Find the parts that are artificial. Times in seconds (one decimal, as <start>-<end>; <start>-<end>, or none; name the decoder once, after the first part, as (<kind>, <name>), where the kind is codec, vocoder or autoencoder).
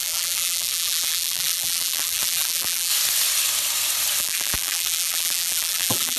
0.0-2.9 (vocoder, BigVGAN v2); 4.2-6.2